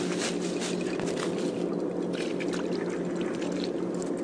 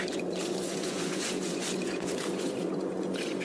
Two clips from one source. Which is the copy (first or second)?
second